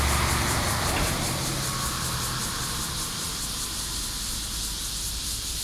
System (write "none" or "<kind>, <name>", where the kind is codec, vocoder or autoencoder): none